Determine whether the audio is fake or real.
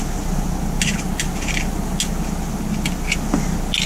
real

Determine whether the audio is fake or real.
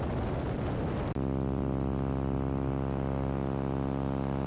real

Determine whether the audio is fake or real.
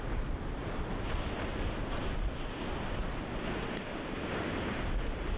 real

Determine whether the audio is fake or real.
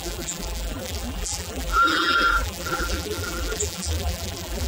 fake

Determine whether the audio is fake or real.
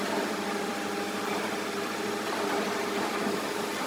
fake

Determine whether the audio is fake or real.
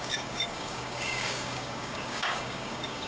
fake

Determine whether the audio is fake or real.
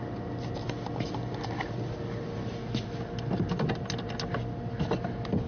real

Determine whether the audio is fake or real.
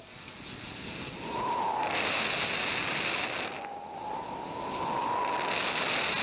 real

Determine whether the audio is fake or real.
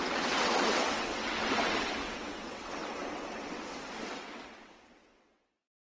fake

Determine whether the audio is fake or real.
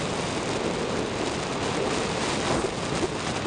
real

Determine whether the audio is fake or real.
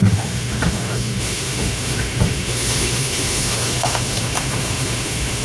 fake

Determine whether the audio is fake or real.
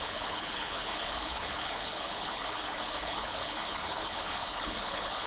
fake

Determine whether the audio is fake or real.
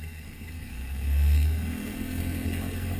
fake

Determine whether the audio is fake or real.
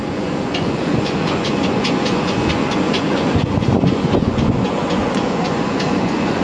fake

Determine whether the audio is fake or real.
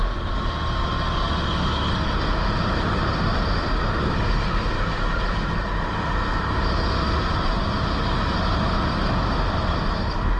real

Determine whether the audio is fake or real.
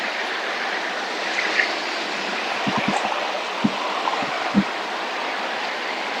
real